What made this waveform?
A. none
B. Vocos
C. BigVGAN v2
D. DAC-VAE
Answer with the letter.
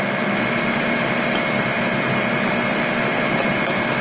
A